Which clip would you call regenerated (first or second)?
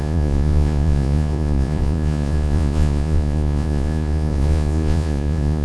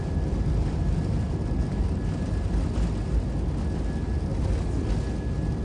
first